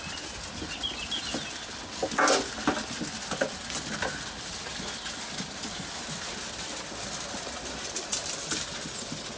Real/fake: real